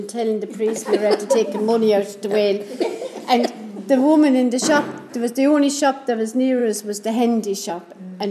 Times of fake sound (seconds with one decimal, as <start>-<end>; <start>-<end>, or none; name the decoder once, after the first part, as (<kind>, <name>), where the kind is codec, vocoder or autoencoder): none